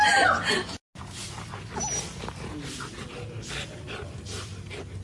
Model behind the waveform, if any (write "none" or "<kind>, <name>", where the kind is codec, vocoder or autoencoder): none